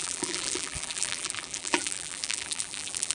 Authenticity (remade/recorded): remade